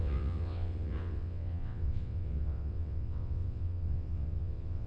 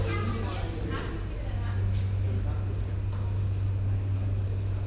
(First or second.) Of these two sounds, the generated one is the first